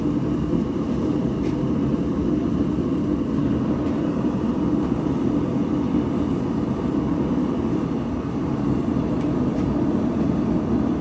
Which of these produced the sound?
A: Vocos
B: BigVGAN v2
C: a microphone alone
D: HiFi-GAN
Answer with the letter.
B